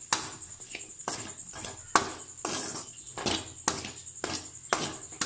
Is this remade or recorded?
recorded